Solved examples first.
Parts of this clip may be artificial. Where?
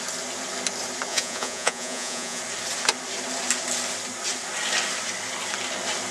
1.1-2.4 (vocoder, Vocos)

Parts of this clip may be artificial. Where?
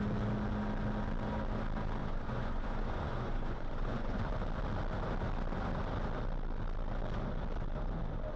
2.0-4.2 (vocoder, Vocos)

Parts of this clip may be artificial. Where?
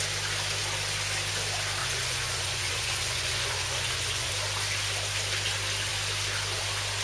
1.8-4.3 (vocoder, Vocos)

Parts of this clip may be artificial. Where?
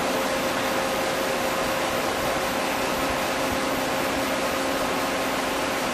none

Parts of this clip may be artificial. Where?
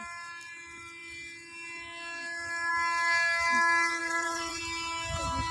4.0-4.6 (vocoder, Vocos)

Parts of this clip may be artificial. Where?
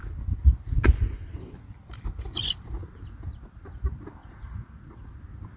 4.2-5.1 (vocoder, Vocos)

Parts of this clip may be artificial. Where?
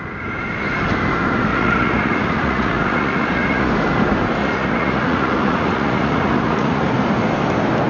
1.5-3.7 (vocoder, Vocos); 4.4-6.9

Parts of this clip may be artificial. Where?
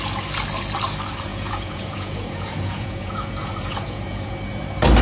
1.3-4.3 (vocoder, Vocos)